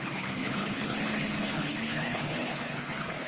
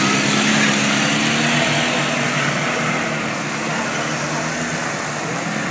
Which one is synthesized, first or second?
first